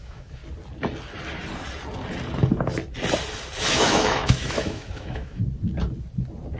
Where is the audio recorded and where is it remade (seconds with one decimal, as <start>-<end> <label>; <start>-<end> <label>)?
0.0-0.4 remade; 0.4-3.7 recorded; 3.7-5.4 remade; 5.4-6.6 recorded